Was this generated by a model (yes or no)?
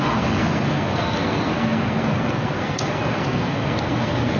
yes